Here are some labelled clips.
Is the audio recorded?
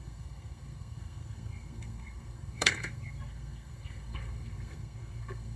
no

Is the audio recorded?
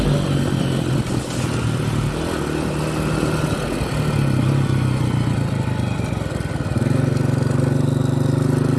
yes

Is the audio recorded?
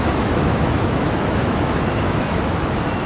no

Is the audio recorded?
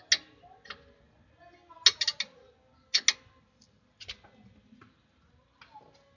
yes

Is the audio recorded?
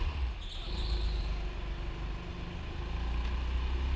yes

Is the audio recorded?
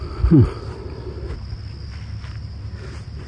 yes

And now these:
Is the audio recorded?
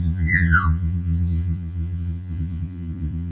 no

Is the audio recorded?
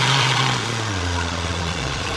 no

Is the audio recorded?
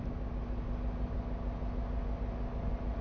yes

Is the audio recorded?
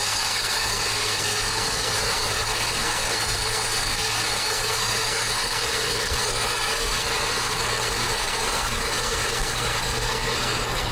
no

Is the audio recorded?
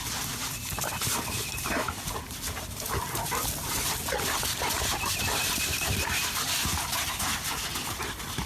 yes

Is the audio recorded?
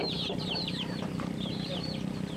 no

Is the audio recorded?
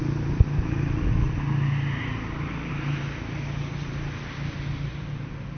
yes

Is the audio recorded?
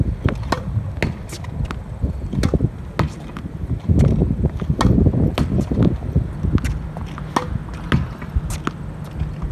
yes